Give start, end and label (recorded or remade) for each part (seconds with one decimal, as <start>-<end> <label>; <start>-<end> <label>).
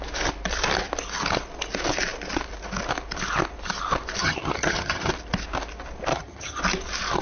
0.0-4.2 recorded; 4.2-5.1 remade; 5.1-6.1 recorded; 6.1-6.6 remade; 6.6-7.2 recorded